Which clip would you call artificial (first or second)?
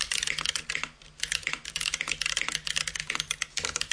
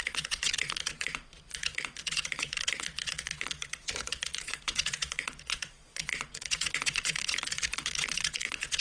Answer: second